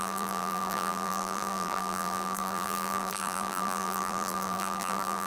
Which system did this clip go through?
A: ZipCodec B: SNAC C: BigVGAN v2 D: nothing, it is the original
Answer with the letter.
C